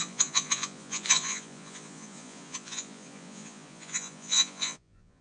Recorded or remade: remade